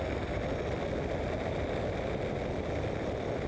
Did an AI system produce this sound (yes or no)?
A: no